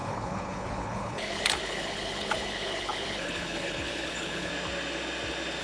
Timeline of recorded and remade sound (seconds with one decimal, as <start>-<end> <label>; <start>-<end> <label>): 0.0-4.5 remade; 4.5-5.6 recorded